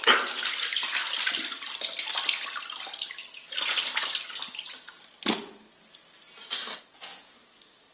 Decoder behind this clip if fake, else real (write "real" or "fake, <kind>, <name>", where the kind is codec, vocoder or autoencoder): real